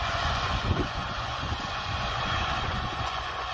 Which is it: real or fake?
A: fake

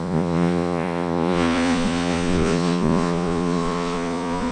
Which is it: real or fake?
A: fake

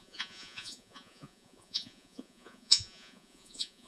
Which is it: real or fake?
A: fake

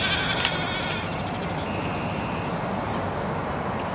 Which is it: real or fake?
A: real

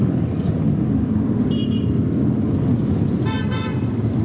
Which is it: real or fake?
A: real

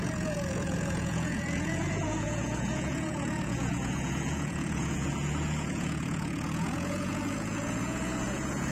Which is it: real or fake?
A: fake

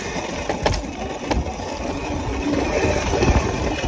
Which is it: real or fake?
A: real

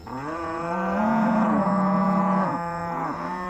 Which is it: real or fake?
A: fake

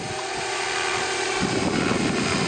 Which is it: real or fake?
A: real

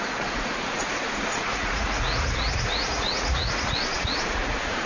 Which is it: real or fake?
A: fake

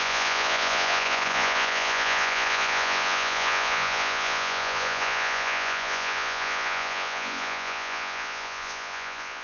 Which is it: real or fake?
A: fake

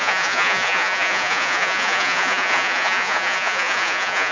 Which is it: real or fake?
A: fake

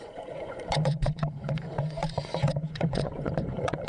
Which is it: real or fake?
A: fake